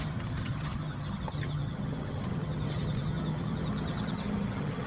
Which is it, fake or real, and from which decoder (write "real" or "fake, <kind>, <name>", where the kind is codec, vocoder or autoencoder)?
fake, vocoder, HiFi-GAN